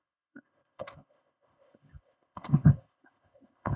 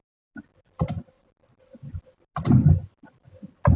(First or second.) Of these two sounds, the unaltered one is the second